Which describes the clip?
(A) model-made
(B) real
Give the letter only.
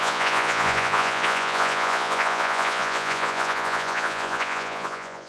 A